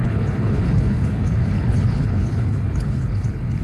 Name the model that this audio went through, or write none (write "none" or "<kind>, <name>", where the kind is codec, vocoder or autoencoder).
codec, HILCodec